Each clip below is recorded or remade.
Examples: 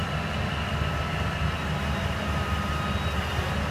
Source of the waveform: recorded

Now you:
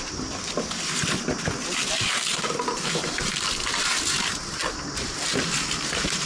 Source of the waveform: recorded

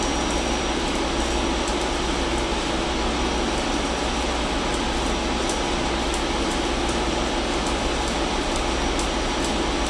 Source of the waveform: recorded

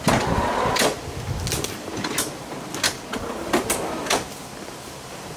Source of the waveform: recorded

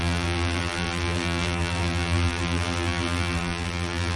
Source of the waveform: remade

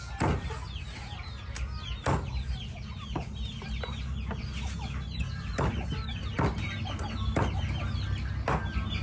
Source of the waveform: recorded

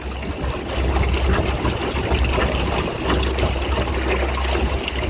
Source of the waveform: recorded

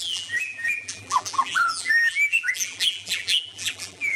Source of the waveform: remade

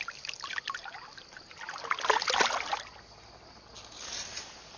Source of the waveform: recorded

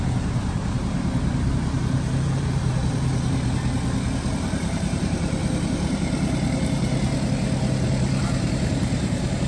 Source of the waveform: remade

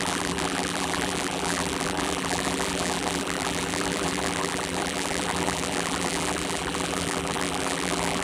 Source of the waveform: remade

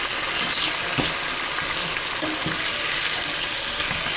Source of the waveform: recorded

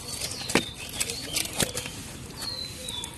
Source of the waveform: recorded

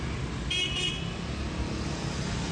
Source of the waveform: recorded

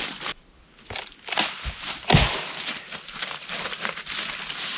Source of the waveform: recorded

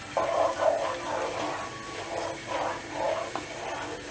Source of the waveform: recorded